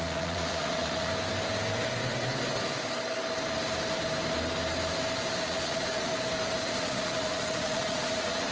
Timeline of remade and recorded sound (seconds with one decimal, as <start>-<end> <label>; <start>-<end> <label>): 0.0-1.1 remade; 1.1-5.4 recorded; 5.4-6.1 remade; 6.1-6.6 recorded; 6.6-8.5 remade